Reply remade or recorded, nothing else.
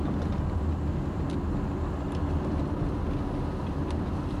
recorded